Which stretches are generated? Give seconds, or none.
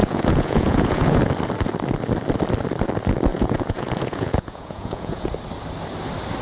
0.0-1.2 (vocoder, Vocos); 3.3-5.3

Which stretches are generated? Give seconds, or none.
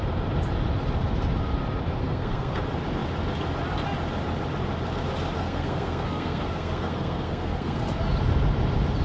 2.0-2.6 (codec, SNAC); 5.4-8.0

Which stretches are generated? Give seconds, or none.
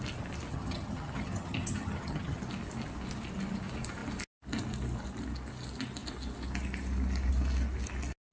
0.5-2.4 (vocoder, HiFi-GAN)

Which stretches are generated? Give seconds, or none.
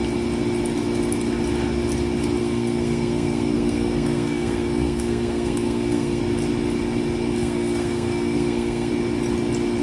2.4-6.2 (codec, SNAC); 7.4-8.9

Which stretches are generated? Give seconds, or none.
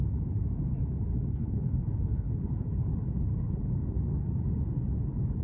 1.1-4.3 (codec, HILCodec)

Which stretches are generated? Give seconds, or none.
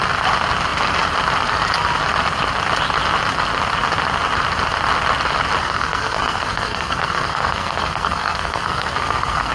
5.6-9.5 (codec, SNAC)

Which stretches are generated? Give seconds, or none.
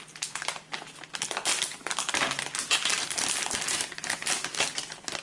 none